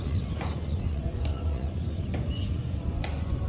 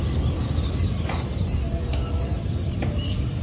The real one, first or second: second